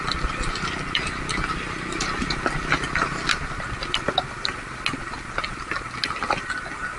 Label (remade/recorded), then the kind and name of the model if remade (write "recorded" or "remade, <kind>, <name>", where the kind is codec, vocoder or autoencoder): recorded